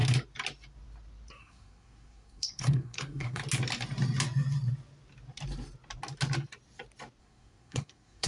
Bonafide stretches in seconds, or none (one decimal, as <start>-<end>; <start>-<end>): 0.0-1.4; 3.4-7.2